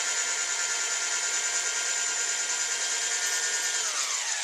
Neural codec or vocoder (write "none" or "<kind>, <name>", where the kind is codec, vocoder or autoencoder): none